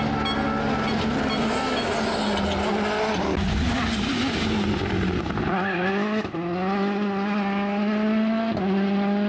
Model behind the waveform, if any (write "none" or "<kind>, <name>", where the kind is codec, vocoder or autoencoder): none